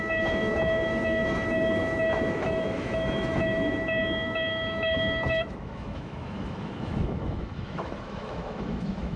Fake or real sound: fake